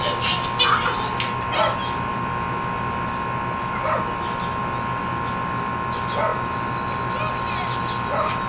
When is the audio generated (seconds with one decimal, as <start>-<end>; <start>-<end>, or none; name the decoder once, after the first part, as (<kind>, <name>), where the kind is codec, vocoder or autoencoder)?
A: none